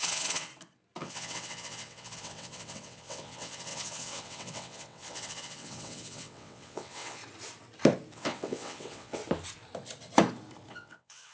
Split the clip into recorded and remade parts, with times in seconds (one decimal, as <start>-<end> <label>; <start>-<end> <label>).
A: 0.0-0.5 remade; 0.5-1.0 recorded; 1.0-7.2 remade; 7.2-8.1 recorded; 8.1-9.2 remade; 9.2-10.7 recorded; 10.7-11.3 remade